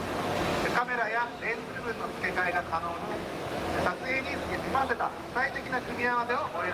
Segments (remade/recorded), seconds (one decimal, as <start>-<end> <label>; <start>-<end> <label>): 0.0-0.5 recorded; 0.5-4.2 remade; 4.2-4.8 recorded; 4.8-6.3 remade; 6.3-6.7 recorded